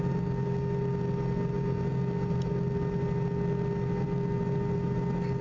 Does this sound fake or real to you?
real